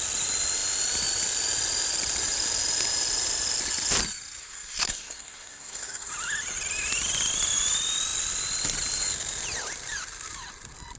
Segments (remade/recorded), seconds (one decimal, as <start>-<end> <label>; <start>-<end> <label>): 0.0-4.4 recorded; 4.4-6.1 remade; 6.1-11.0 recorded

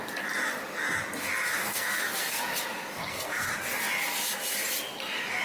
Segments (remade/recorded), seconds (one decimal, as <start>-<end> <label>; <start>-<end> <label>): 0.0-1.6 recorded; 1.6-2.4 remade; 2.4-3.0 recorded; 3.0-3.5 remade; 3.5-5.4 recorded

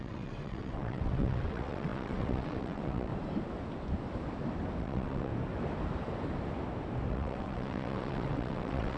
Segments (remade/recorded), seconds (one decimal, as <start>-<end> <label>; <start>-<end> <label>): 0.0-3.1 remade; 3.1-4.8 recorded; 4.8-5.3 remade; 5.3-7.1 recorded; 7.1-9.0 remade

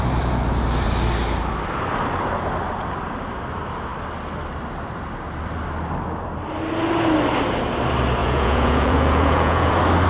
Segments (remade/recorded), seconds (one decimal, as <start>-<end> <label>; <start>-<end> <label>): 0.0-8.2 recorded; 8.2-9.7 remade; 9.7-10.1 recorded

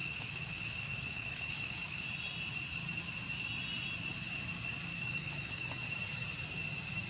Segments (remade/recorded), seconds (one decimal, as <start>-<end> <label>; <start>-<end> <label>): 0.0-2.0 remade; 2.0-4.9 recorded; 4.9-5.7 remade; 5.7-7.1 recorded

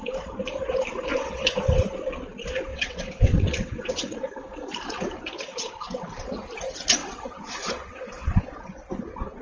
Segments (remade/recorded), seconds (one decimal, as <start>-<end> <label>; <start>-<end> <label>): 0.0-1.1 recorded; 1.1-1.9 remade; 1.9-2.7 recorded; 2.7-4.2 remade; 4.2-7.0 recorded; 7.0-8.4 remade; 8.4-9.4 recorded